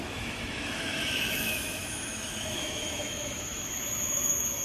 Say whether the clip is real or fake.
fake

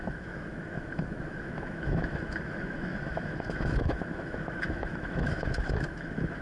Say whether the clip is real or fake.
fake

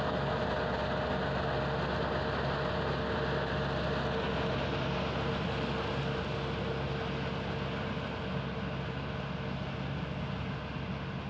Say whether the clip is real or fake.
real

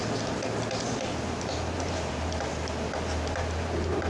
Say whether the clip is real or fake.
real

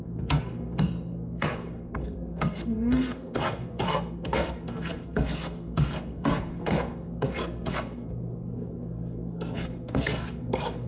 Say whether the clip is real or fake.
fake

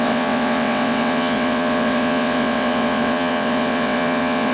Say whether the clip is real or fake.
fake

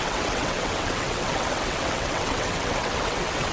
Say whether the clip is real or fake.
fake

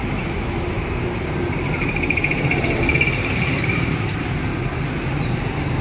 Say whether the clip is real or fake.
fake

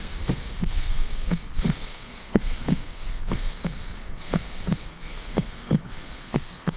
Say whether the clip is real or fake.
fake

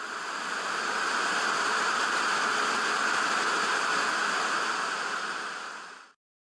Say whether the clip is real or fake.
real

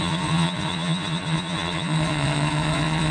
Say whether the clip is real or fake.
fake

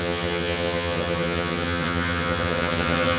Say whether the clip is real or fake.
fake